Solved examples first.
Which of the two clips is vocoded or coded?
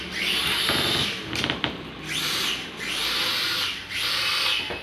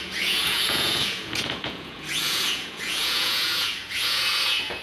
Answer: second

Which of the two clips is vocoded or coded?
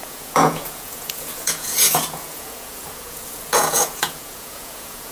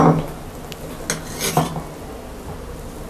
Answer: first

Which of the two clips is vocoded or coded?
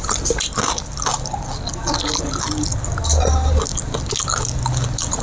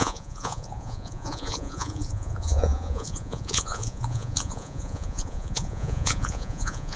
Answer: second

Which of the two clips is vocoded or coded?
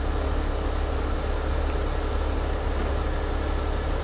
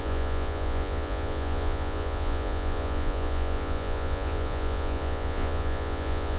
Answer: second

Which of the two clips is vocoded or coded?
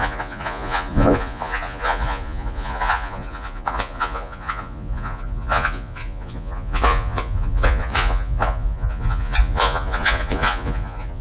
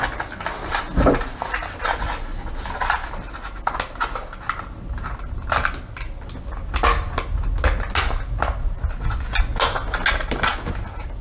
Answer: first